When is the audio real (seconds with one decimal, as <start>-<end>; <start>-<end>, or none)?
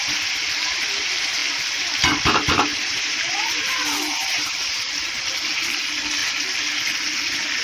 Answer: 0.0-2.7; 4.9-7.6